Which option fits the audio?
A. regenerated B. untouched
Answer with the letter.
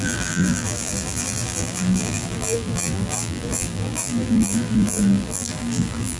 A